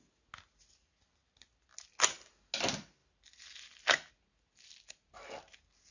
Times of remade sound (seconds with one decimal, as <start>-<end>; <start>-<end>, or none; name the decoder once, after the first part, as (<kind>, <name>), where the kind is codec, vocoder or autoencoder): none